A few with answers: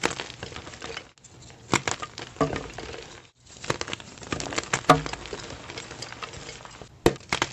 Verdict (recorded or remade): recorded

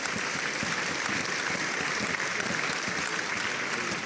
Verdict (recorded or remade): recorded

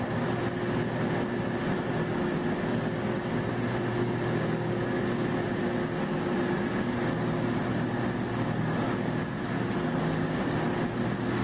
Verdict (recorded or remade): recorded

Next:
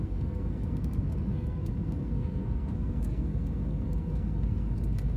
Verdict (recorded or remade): remade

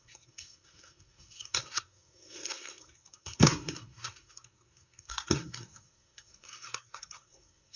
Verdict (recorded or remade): remade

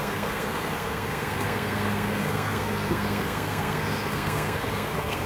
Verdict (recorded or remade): remade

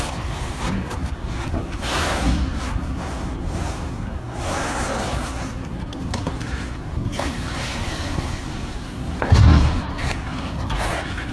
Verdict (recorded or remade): remade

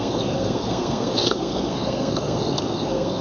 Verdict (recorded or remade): remade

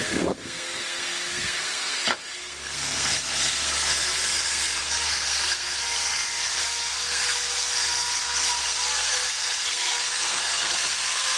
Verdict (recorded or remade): remade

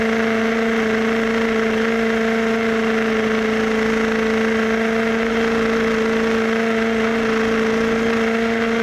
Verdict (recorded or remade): recorded